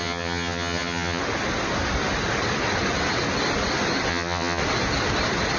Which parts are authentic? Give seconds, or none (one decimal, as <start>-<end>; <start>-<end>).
1.2-4.1; 4.6-5.6